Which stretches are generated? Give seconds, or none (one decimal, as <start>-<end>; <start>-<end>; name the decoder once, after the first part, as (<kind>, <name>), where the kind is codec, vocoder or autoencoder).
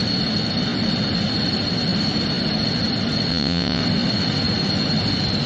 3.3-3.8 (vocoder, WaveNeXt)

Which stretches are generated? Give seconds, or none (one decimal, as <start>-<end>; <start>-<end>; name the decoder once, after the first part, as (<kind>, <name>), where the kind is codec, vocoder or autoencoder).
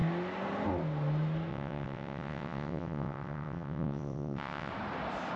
1.5-4.7 (vocoder, WaveNeXt)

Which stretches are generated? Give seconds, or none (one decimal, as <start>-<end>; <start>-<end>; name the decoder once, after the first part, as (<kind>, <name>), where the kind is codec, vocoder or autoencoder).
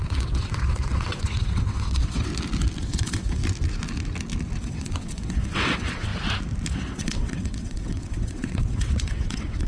0.0-2.3 (vocoder, WaveNeXt); 2.8-3.4; 4.6-6.1; 6.7-9.7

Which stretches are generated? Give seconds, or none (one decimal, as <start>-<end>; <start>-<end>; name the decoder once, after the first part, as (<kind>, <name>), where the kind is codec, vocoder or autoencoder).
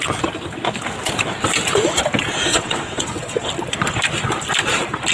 2.5-3.5 (vocoder, WaveNeXt)